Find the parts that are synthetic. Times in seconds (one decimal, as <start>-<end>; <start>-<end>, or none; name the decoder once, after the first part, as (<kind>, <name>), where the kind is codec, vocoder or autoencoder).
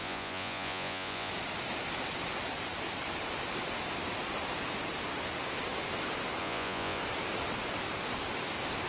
0.0-1.3 (vocoder, Vocos); 6.4-7.0